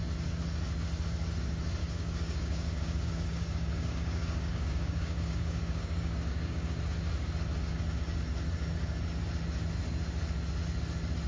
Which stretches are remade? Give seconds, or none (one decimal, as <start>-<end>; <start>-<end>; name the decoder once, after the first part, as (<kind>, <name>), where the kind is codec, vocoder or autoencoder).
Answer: 1.8-6.8 (codec, DAC)